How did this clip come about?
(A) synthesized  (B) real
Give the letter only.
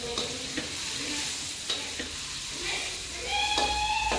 B